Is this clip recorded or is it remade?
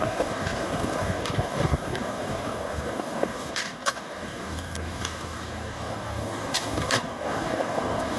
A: remade